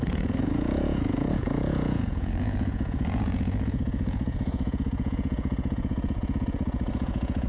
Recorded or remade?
remade